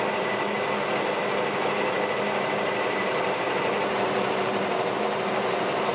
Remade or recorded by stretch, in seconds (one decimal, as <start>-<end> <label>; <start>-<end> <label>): 0.0-3.0 recorded; 3.0-5.9 remade